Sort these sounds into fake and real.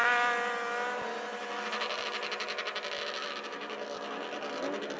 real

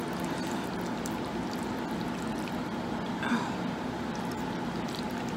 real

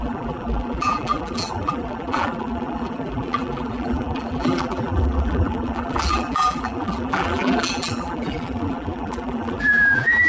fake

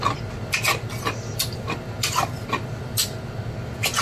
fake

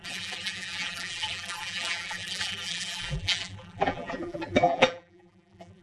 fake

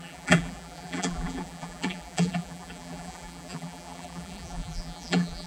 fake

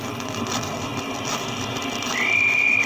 real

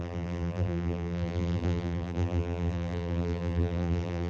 fake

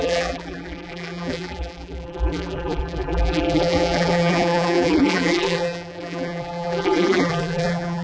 fake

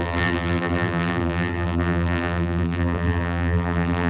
fake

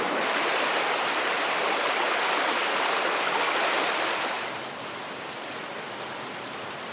real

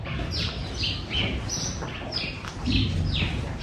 fake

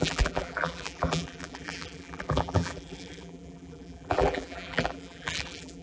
fake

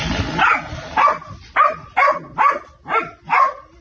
real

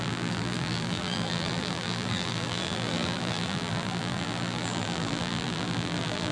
fake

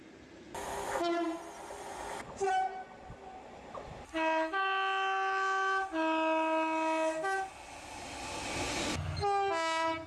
real